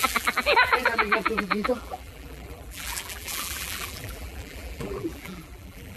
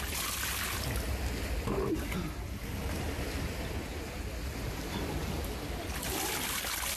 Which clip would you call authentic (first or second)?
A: second